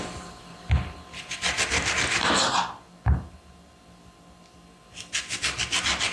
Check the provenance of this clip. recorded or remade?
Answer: recorded